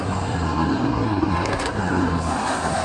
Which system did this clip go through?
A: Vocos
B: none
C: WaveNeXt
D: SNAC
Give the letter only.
D